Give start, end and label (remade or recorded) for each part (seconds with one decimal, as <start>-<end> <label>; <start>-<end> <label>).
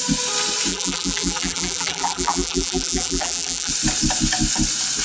0.0-0.7 recorded; 0.7-3.7 remade; 3.7-5.0 recorded